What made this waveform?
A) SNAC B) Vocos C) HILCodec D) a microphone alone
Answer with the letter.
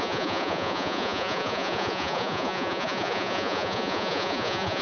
B